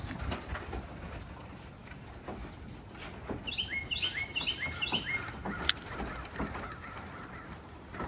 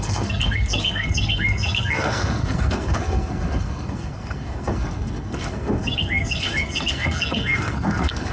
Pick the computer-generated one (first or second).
second